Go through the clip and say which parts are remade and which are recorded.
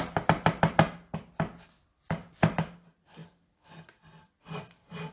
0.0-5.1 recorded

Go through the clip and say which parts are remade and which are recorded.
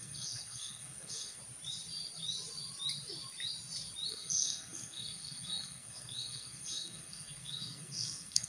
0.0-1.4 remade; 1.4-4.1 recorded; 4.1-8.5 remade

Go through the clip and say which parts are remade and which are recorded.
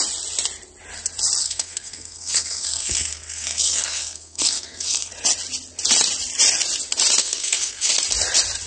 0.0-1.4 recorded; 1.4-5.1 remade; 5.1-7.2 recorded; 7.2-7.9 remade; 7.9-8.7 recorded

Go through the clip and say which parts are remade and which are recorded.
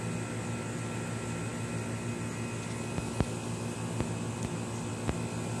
0.0-5.6 recorded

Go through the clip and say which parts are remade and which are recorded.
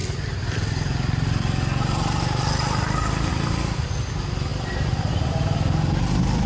0.0-6.5 recorded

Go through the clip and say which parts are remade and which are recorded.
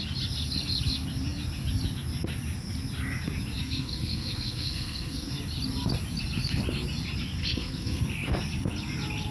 0.0-3.6 recorded; 3.6-5.3 remade; 5.3-7.4 recorded; 7.4-8.0 remade; 8.0-9.3 recorded